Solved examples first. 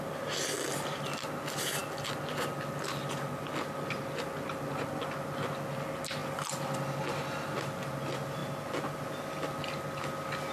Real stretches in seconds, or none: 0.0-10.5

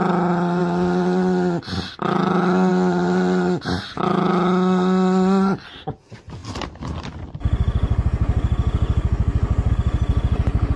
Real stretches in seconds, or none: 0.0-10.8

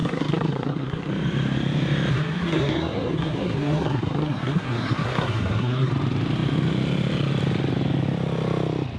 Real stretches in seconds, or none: 1.1-2.1; 5.9-9.0